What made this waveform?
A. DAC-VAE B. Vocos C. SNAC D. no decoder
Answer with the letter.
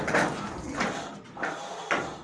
D